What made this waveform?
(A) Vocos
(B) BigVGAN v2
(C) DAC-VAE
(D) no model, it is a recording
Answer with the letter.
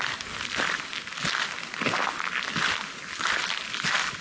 D